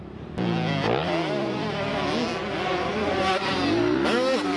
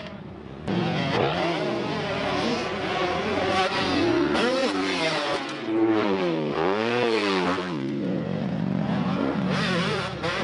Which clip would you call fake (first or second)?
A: second